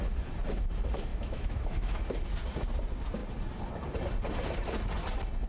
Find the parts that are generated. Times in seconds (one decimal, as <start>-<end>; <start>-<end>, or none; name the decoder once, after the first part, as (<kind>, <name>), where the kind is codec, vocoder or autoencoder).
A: 1.1-2.0 (autoencoder, DAC-VAE)